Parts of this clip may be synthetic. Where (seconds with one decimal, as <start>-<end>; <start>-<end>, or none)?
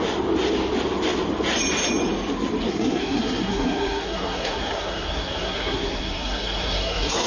2.7-7.3